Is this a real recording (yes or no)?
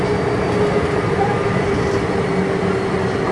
yes